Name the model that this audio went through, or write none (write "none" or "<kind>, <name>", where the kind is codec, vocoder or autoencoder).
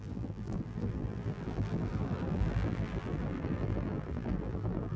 vocoder, BigVGAN v2